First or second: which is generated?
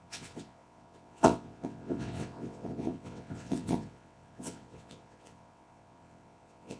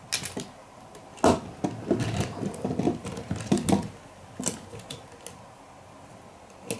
first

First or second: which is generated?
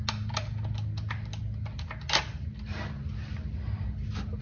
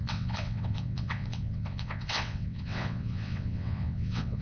second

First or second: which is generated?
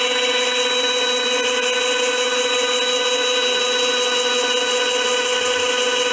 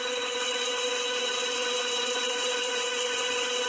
second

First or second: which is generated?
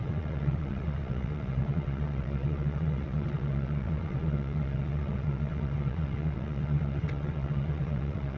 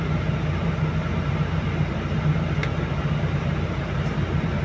first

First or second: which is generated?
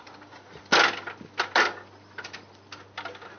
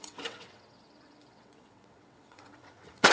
second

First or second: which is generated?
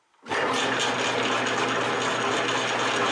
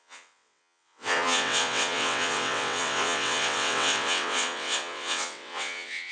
second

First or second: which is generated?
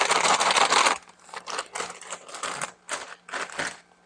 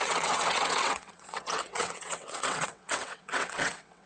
second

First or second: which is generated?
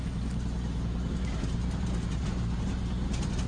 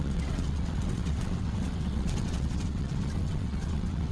second